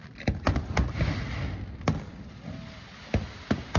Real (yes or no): yes